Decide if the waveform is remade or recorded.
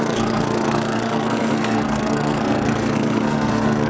remade